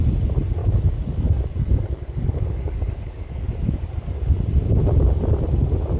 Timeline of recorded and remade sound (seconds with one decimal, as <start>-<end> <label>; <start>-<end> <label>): 0.0-0.6 recorded; 0.6-4.2 remade; 4.2-6.0 recorded